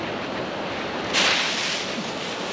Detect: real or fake real